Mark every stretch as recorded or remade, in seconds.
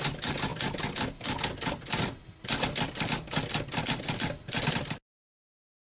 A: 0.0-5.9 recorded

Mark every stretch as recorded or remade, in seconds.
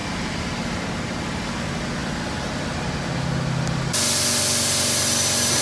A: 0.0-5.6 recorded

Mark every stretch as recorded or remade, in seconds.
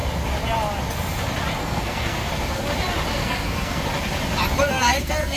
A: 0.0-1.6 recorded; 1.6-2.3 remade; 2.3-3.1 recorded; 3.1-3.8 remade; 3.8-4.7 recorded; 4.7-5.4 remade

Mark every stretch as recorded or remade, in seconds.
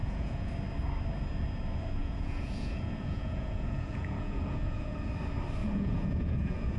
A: 0.0-0.5 remade; 0.5-2.0 recorded; 2.0-5.1 remade; 5.1-5.6 recorded; 5.6-6.8 remade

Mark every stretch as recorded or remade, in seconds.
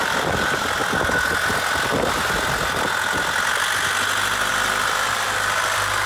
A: 0.0-0.8 remade; 0.8-4.5 recorded; 4.5-6.1 remade